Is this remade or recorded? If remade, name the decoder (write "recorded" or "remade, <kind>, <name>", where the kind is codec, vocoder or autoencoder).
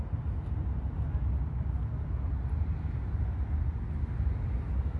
recorded